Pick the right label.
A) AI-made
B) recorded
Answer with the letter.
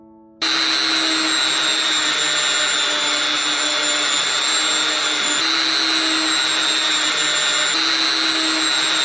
B